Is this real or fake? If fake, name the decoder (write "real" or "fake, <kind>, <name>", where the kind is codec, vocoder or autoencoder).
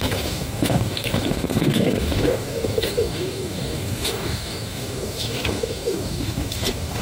fake, codec, DAC